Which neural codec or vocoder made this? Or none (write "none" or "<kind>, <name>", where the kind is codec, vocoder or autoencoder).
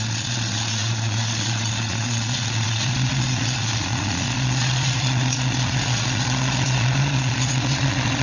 vocoder, Vocos